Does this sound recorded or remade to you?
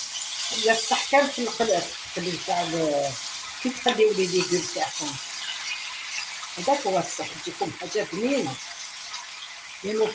recorded